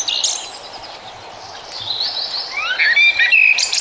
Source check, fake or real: real